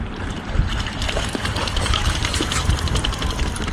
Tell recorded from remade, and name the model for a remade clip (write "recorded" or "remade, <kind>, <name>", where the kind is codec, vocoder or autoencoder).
remade, vocoder, BigVGAN v2